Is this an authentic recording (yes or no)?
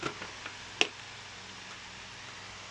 yes